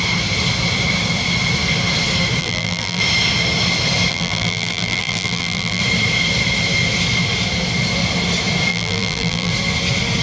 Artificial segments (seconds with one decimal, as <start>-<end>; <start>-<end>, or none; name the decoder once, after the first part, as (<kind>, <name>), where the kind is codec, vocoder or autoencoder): 2.4-3.0 (vocoder, BigVGAN v2); 4.1-5.8; 8.7-9.5